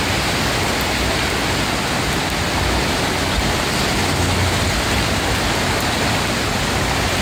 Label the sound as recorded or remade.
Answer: recorded